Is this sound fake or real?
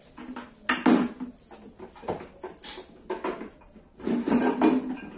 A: real